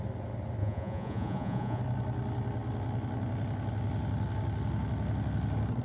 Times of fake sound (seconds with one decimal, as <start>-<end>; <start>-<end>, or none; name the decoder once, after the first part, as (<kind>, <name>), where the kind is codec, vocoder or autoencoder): 0.6-1.8 (vocoder, Vocos)